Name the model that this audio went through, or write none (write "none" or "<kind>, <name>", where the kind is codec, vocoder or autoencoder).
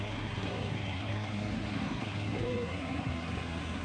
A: codec, SNAC